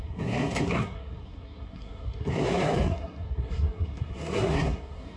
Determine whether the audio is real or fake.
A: fake